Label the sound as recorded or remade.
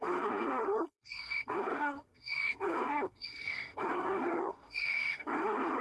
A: remade